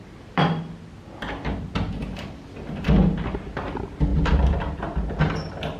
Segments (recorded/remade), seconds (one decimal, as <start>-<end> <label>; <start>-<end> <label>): 0.0-0.6 remade; 0.6-5.8 recorded